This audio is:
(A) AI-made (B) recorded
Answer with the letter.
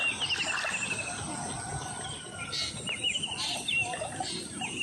B